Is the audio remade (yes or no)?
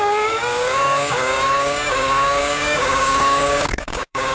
yes